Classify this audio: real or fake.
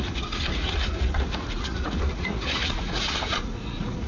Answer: fake